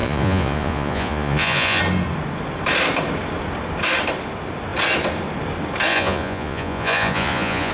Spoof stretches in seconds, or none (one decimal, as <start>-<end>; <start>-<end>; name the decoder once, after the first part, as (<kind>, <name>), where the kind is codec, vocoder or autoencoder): 0.0-1.8 (vocoder, Vocos); 5.9-7.7